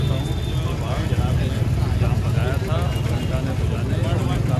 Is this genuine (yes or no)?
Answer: yes